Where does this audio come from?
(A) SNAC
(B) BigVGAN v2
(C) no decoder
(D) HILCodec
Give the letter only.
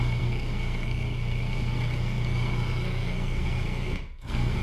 A